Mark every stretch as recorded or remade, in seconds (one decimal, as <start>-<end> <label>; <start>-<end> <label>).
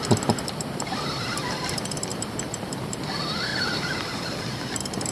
0.0-5.1 remade